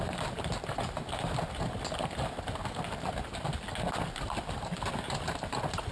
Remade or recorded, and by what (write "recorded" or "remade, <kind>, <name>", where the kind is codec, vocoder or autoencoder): recorded